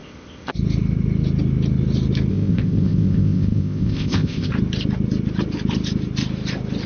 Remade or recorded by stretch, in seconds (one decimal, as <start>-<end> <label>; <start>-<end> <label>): 0.0-0.5 remade; 0.5-2.3 recorded; 2.3-4.5 remade; 4.5-6.9 recorded